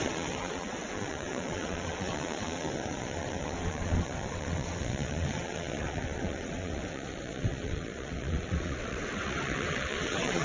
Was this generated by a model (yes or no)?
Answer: yes